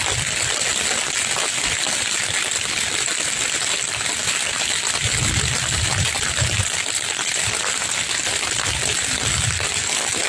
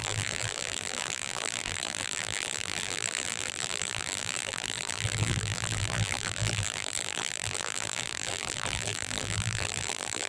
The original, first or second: first